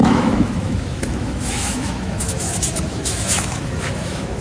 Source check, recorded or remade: remade